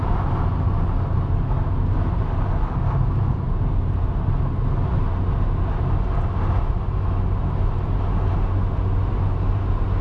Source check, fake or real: real